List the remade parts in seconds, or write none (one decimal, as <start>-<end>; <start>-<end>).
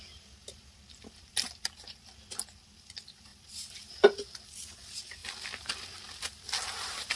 none